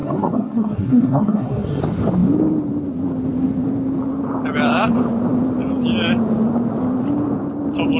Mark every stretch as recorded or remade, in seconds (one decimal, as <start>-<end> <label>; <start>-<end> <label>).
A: 0.0-1.8 remade; 1.8-8.0 recorded